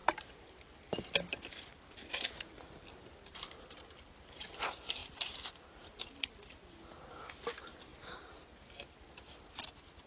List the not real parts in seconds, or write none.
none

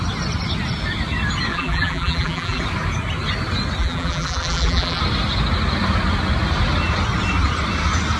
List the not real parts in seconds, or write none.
1.5-2.6 (vocoder, BigVGAN v2); 3.8-5.0

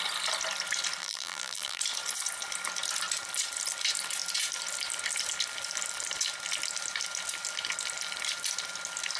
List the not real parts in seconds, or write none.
1.0-1.8 (vocoder, BigVGAN v2)

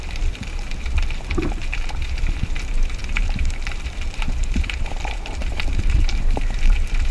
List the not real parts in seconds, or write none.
0.0-7.1 (vocoder, BigVGAN v2)

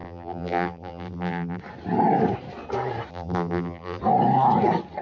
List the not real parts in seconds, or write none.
0.0-1.6 (vocoder, BigVGAN v2); 3.1-4.0

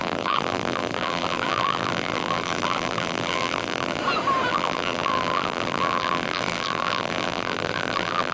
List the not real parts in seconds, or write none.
0.0-4.0 (vocoder, BigVGAN v2); 4.5-8.3

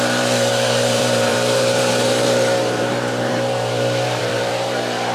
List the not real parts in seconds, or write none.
0.0-5.1 (vocoder, BigVGAN v2)

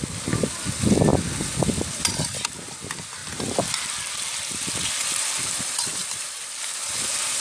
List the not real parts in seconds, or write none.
none